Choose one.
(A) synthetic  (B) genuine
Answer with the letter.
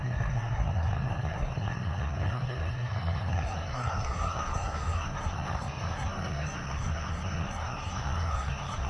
A